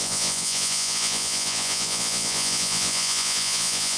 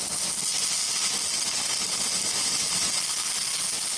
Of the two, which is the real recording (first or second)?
second